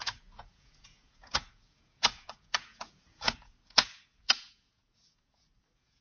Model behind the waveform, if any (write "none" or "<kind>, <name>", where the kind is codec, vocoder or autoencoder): vocoder, Vocos